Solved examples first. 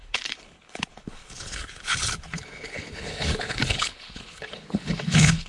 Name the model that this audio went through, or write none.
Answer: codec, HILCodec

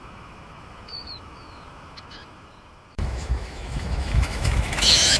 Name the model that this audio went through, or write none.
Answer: autoencoder, DAC-VAE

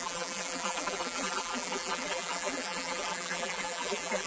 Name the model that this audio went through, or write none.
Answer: vocoder, BigVGAN v2